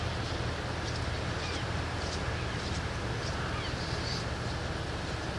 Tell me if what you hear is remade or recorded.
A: recorded